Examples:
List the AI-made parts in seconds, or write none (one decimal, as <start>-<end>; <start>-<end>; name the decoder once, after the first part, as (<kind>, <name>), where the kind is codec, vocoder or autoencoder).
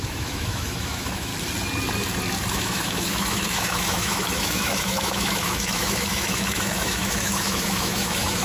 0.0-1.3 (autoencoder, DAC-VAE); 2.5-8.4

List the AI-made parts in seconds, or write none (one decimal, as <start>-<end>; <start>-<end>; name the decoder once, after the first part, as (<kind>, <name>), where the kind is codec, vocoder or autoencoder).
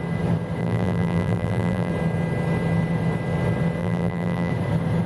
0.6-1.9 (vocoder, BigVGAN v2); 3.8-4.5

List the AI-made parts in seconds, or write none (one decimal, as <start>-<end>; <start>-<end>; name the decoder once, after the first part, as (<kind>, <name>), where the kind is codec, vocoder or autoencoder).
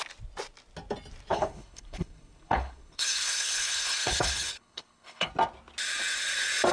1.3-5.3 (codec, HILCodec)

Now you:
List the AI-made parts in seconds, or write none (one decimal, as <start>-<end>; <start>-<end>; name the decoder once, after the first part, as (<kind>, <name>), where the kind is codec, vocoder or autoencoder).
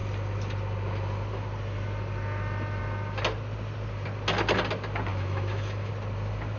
5.1-5.9 (autoencoder, DAC-VAE)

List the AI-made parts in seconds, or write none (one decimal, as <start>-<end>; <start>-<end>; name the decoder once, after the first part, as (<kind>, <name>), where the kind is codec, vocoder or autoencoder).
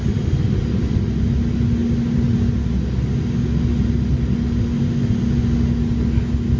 none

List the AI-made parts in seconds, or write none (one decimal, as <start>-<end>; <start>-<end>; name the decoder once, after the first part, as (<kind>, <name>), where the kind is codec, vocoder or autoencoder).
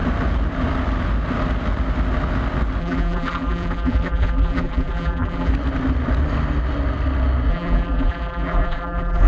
2.8-5.5 (vocoder, BigVGAN v2); 7.5-9.3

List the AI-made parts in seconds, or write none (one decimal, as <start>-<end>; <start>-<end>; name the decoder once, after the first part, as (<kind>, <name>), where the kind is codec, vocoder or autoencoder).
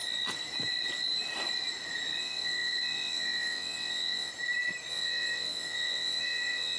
2.2-4.3 (vocoder, WaveNeXt); 4.9-6.8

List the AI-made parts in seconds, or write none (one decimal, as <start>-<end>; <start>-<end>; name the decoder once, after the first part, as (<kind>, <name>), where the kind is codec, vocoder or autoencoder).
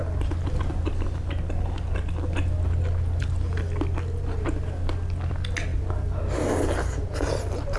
none